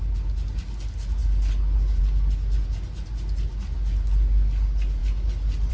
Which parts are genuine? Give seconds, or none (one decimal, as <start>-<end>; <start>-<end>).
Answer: 0.0-5.7